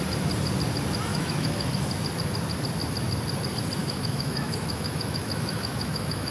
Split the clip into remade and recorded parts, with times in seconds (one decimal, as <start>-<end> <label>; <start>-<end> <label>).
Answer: 0.0-1.1 recorded; 1.1-1.7 remade; 1.7-3.8 recorded; 3.8-6.3 remade

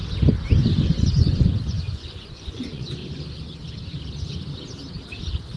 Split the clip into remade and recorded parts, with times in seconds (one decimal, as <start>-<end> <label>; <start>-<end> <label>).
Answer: 0.0-1.1 recorded; 1.1-3.0 remade; 3.0-5.6 recorded

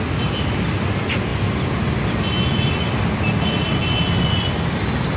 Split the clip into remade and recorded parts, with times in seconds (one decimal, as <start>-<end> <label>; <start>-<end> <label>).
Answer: 0.0-5.2 recorded